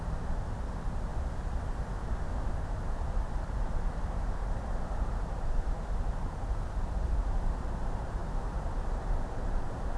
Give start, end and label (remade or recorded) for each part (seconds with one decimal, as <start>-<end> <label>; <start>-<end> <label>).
0.0-1.1 remade; 1.1-2.5 recorded; 2.5-10.0 remade

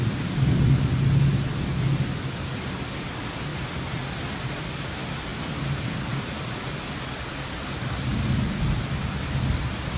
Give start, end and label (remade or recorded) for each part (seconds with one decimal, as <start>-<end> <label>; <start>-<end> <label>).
0.0-3.5 recorded; 3.5-4.0 remade; 4.0-5.3 recorded; 5.3-6.8 remade; 6.8-10.0 recorded

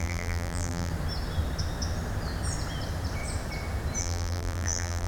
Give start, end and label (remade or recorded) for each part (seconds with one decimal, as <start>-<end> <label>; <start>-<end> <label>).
0.0-0.9 remade; 0.9-4.0 recorded; 4.0-5.1 remade

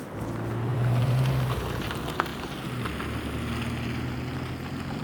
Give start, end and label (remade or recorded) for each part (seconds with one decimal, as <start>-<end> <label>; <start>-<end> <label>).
0.0-0.7 recorded; 0.7-1.3 remade; 1.3-5.0 recorded